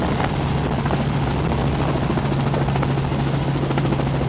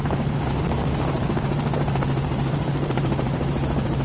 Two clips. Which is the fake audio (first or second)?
second